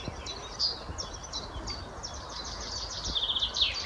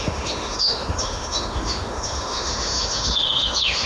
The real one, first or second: first